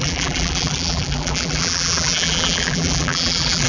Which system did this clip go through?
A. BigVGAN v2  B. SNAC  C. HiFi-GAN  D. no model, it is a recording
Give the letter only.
A